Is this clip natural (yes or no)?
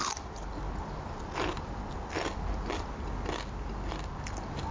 yes